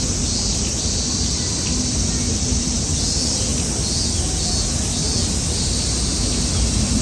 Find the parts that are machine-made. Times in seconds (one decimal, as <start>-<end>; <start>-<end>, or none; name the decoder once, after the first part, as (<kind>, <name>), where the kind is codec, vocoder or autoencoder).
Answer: none

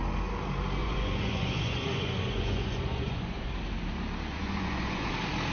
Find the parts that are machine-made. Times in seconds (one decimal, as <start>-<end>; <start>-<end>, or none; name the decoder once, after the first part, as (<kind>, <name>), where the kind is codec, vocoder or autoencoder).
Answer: 0.8-3.5 (vocoder, Vocos); 4.3-5.1